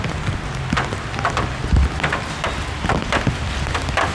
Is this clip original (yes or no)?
yes